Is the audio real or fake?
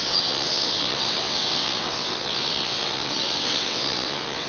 fake